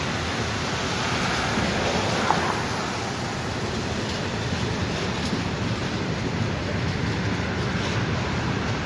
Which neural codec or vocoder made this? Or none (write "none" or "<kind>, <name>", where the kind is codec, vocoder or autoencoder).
none